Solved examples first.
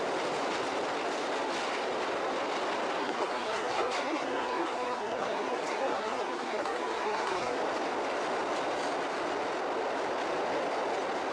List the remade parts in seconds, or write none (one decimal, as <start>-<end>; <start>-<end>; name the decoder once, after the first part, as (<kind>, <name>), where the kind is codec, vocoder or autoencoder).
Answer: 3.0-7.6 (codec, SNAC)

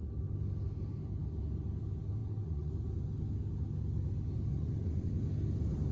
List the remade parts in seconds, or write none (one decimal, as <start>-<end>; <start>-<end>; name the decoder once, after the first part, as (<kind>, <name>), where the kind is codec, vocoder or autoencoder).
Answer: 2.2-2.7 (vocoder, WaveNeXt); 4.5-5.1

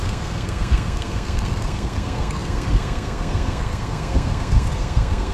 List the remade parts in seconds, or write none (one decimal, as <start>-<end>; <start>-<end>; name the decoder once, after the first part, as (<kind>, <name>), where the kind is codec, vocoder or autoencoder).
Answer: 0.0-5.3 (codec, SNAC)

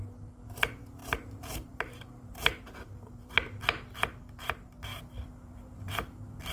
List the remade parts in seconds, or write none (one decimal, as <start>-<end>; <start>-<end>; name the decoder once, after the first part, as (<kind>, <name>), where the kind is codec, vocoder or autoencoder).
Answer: 1.0-3.3 (vocoder, BigVGAN v2); 4.9-5.9

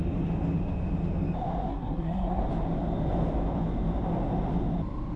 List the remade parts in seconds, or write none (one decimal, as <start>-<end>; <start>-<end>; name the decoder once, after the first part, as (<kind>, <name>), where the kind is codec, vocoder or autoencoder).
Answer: 1.7-2.4 (codec, SNAC)

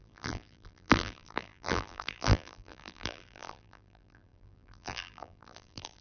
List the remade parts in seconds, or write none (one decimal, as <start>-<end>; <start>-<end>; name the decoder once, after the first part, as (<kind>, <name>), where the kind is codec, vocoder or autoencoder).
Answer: 0.0-6.0 (vocoder, BigVGAN v2)